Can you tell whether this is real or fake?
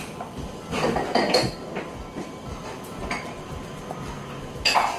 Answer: real